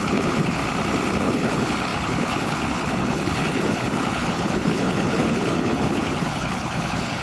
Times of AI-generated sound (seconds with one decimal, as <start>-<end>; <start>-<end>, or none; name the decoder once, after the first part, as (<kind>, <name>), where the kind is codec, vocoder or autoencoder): 0.0-0.6 (codec, HILCodec); 1.2-7.2